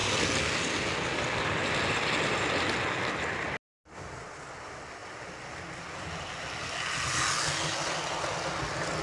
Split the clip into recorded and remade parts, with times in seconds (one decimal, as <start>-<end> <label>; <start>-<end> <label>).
0.0-9.0 recorded